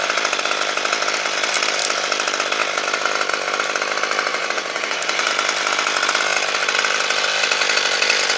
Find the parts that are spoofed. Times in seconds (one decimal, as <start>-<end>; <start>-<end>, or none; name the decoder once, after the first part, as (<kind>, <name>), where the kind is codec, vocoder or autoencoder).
4.3-5.3 (vocoder, Vocos)